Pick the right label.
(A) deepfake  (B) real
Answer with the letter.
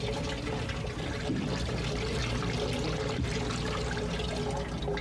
B